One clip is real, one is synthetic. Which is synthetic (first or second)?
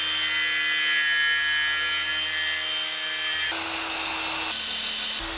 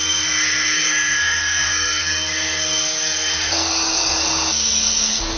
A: second